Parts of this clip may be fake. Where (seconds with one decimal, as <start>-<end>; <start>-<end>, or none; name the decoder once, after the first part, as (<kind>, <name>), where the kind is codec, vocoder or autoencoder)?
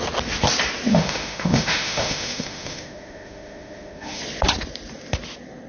0.9-4.2 (autoencoder, DAC-VAE)